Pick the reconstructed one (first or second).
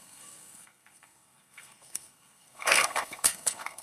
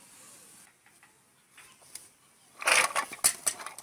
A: first